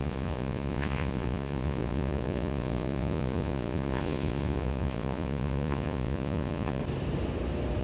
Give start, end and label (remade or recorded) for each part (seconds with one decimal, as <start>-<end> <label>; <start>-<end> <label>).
0.0-6.8 remade; 6.8-7.8 recorded